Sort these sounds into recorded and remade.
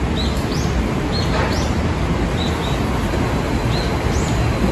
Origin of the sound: recorded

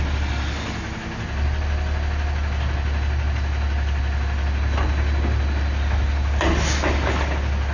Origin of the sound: recorded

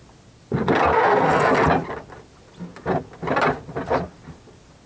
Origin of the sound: recorded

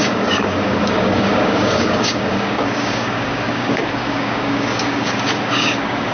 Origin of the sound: remade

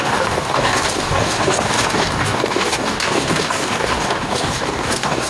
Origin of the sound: remade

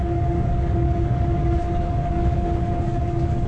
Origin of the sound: remade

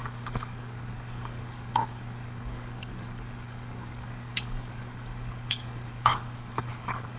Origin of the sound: remade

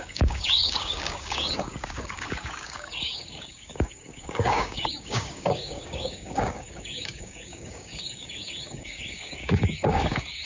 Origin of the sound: remade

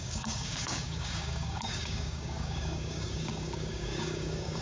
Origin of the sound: remade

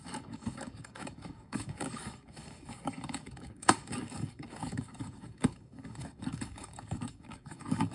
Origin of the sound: remade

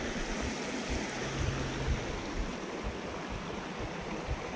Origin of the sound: recorded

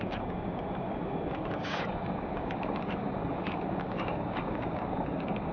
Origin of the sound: remade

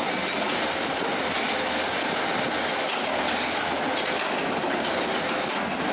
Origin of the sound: recorded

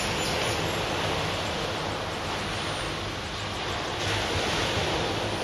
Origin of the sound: recorded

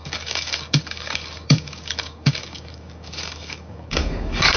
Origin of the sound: remade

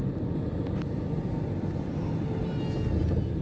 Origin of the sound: recorded